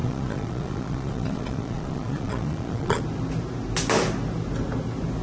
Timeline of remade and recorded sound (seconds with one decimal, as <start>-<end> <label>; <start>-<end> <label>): 0.0-3.0 remade; 3.0-5.2 recorded